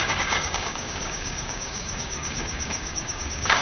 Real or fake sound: fake